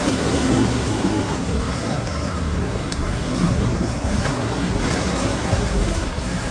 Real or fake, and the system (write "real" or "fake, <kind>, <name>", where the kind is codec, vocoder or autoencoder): fake, codec, SNAC